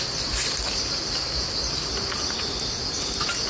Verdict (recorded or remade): recorded